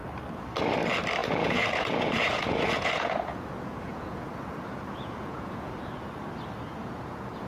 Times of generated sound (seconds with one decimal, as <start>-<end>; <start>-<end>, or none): 1.2-5.7; 6.8-7.5